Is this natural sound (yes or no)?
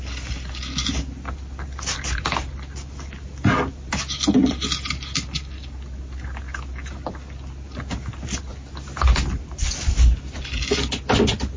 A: yes